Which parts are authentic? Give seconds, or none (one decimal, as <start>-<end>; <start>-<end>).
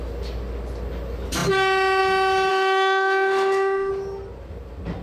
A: 0.0-2.5; 3.9-5.0